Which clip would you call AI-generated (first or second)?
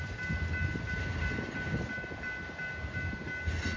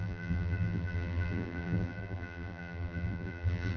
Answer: second